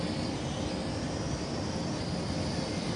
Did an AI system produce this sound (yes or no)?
no